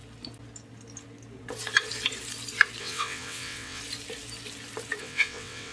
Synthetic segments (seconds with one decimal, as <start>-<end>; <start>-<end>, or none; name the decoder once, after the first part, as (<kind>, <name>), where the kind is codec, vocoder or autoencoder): 2.8-3.8 (vocoder, WaveNeXt); 5.0-5.7